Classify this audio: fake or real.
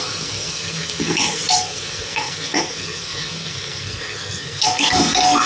fake